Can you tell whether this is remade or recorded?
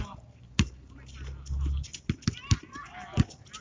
recorded